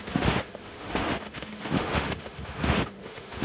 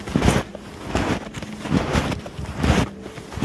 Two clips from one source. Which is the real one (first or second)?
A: second